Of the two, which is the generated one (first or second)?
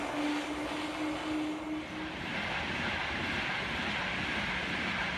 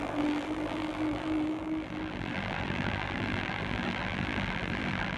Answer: second